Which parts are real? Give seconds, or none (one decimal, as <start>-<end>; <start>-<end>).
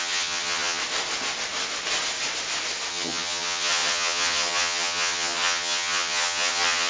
0.8-2.9